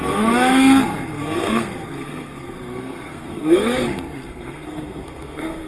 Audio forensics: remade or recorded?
remade